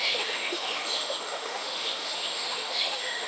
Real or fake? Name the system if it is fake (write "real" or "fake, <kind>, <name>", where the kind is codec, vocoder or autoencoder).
fake, autoencoder, DAC-VAE